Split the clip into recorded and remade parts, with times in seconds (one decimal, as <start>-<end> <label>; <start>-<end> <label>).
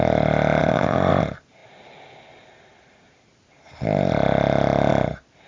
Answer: 0.0-0.6 recorded; 0.6-1.2 remade; 1.2-5.5 recorded